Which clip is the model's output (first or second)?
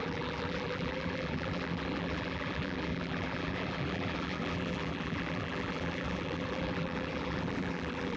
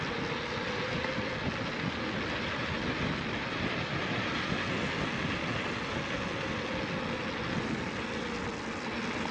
first